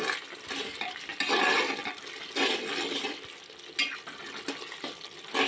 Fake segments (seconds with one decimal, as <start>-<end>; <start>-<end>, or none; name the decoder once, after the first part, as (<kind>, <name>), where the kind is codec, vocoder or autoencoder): none